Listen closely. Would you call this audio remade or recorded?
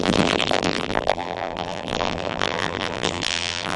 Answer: remade